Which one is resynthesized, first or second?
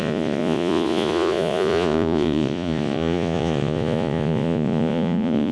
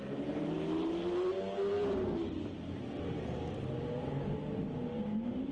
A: first